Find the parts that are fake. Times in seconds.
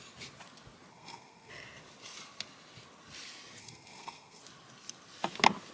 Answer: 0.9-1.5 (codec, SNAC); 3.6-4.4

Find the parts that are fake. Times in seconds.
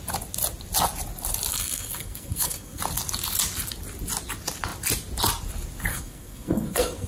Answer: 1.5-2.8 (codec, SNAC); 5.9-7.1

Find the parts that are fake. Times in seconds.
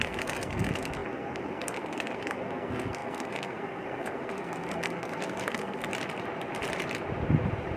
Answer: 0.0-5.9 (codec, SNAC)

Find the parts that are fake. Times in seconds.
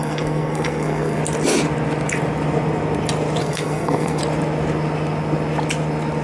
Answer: 0.0-1.2 (codec, SNAC); 3.4-4.2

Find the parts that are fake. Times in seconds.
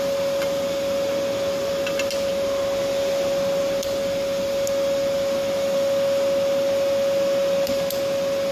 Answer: none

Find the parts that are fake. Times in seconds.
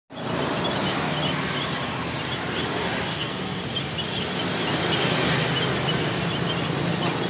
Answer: 3.1-3.6 (codec, SNAC)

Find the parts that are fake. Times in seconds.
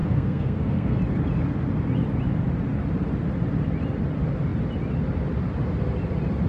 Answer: 0.0-1.0 (codec, SNAC)